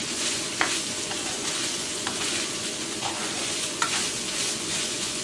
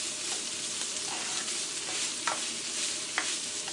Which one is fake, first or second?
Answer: first